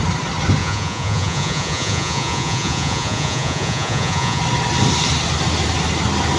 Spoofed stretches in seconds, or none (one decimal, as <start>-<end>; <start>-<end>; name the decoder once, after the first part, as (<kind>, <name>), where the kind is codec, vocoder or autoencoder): 0.6-4.4 (vocoder, Vocos)